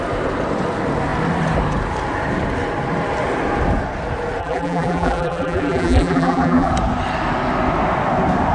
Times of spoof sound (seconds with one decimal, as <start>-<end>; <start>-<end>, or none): 4.4-6.7